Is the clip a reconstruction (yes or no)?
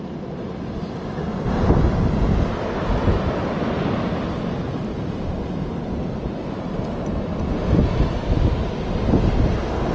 no